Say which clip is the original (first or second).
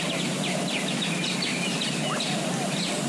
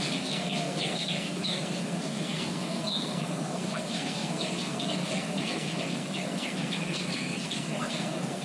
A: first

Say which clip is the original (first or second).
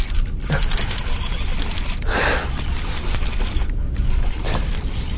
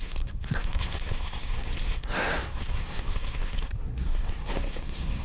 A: first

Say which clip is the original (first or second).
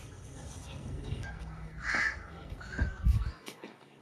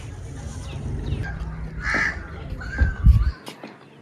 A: second